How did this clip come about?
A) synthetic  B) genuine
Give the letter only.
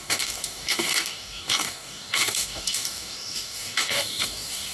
A